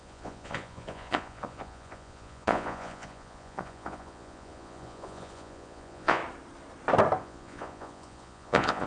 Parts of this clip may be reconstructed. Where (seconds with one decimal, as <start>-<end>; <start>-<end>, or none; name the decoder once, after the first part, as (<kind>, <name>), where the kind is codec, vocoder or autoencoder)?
0.0-6.2 (vocoder, Vocos); 7.2-8.9